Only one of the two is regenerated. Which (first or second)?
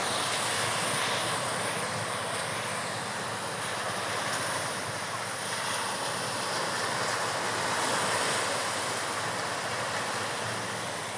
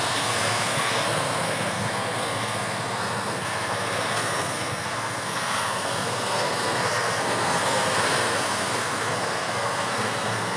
second